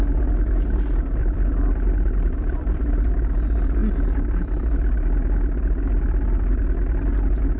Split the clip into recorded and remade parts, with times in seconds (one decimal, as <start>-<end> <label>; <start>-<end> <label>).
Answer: 0.0-1.2 recorded; 1.2-2.8 remade; 2.8-7.6 recorded